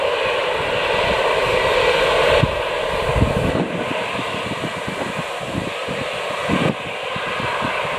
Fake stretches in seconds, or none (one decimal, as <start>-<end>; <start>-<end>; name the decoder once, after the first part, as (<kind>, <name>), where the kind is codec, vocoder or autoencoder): none